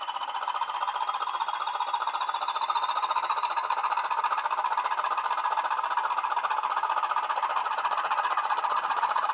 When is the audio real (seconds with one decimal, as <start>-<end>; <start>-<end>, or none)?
0.0-7.6